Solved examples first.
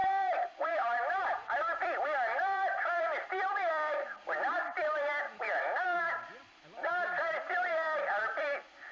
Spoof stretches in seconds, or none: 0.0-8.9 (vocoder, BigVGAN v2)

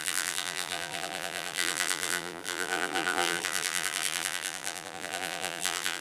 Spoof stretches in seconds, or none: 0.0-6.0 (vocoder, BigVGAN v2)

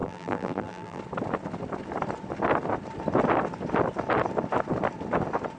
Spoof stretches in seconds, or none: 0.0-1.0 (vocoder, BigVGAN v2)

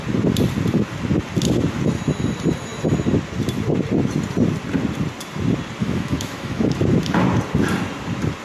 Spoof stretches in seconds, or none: 5.8-6.8 (autoencoder, DAC-VAE)

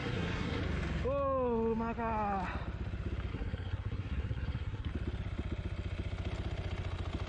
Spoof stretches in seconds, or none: 0.0-0.6 (codec, SNAC); 3.3-4.9

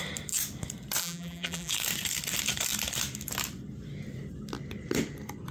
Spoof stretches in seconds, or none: 1.0-1.7 (vocoder, BigVGAN v2)